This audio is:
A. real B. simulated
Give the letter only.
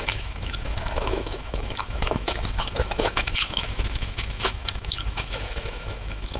B